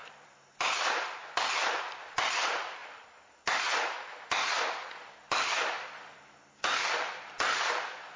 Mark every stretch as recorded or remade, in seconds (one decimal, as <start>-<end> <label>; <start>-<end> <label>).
0.0-1.1 remade; 1.1-8.2 recorded